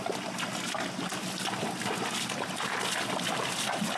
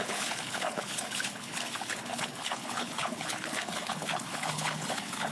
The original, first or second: first